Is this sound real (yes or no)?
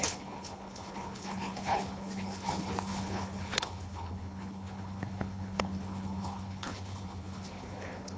no